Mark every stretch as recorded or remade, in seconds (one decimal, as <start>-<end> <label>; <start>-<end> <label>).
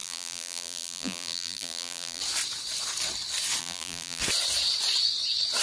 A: 0.0-2.2 remade; 2.2-3.6 recorded; 3.6-4.2 remade; 4.2-5.6 recorded